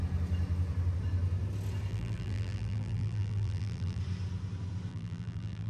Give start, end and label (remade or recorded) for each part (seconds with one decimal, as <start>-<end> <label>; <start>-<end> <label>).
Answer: 0.0-1.9 recorded; 1.9-4.0 remade; 4.0-4.9 recorded; 4.9-5.7 remade

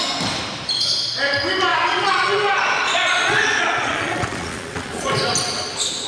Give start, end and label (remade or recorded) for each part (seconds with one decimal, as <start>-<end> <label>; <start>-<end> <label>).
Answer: 0.0-1.7 recorded; 1.7-5.1 remade; 5.1-6.1 recorded

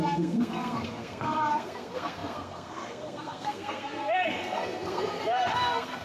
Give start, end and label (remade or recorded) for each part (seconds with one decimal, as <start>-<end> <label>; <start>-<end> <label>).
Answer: 0.0-6.0 remade